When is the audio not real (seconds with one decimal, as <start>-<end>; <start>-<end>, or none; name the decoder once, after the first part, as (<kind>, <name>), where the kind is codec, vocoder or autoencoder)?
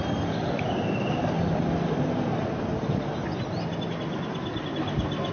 none